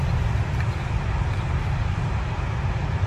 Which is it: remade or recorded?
recorded